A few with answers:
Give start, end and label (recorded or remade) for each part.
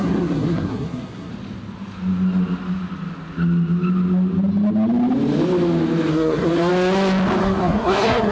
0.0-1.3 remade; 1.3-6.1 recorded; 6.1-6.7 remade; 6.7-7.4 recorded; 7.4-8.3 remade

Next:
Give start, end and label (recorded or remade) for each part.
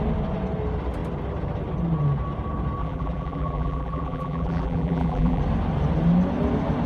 0.0-2.8 recorded; 2.8-5.4 remade; 5.4-6.9 recorded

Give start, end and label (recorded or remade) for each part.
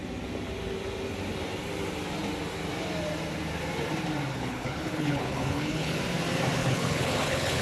0.0-4.3 recorded; 4.3-6.0 remade; 6.0-6.6 recorded; 6.6-7.6 remade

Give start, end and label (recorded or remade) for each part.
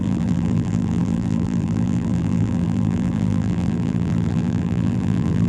0.0-5.5 remade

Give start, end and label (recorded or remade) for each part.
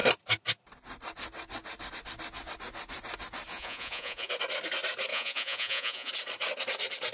0.0-3.5 recorded; 3.5-4.3 remade; 4.3-5.1 recorded; 5.1-6.1 remade; 6.1-7.1 recorded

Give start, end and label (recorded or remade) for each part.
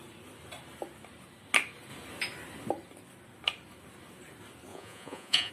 0.0-4.7 recorded; 4.7-5.5 remade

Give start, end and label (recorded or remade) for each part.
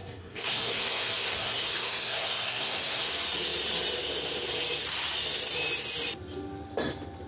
0.0-3.1 remade; 3.1-7.3 recorded